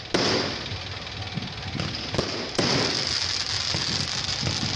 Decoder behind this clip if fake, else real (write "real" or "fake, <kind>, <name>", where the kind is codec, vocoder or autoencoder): real